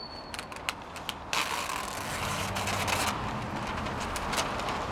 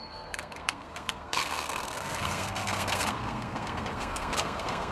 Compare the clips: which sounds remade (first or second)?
second